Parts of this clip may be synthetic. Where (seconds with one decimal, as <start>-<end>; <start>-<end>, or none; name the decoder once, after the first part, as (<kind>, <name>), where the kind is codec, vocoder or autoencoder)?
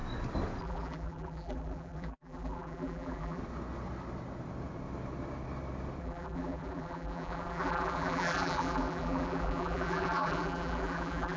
0.6-3.4 (vocoder, BigVGAN v2); 6.0-11.4